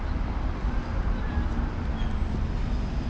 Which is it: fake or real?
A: real